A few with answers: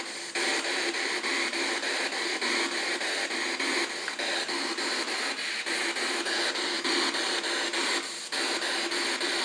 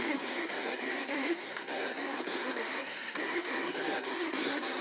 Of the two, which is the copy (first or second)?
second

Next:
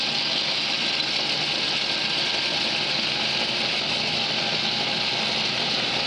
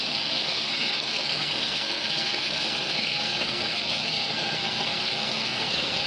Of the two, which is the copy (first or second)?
second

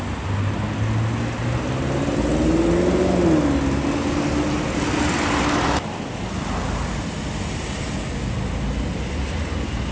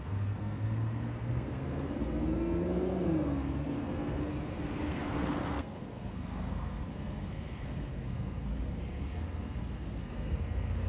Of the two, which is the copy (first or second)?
second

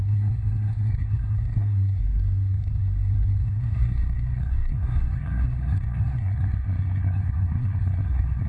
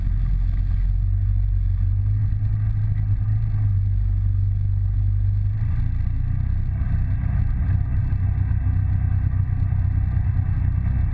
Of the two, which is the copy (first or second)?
first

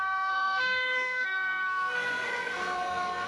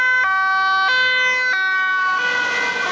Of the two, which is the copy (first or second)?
first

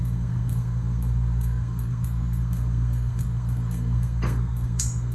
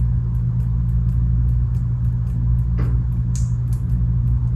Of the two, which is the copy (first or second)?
first